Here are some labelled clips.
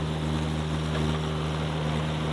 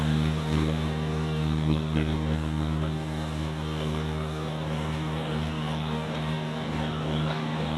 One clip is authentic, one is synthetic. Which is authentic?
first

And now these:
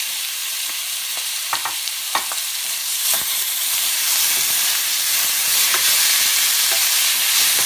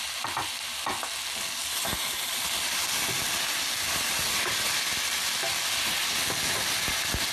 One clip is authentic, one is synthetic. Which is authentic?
second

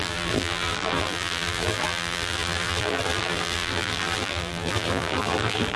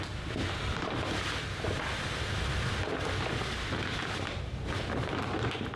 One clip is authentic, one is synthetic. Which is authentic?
second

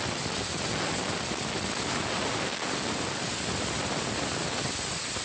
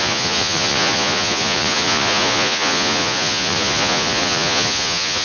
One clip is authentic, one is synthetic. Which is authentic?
first